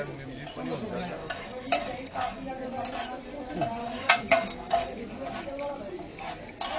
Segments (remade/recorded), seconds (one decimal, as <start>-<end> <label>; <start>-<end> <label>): 0.0-1.2 recorded; 1.2-2.5 remade; 2.5-3.8 recorded; 3.8-5.0 remade; 5.0-6.8 recorded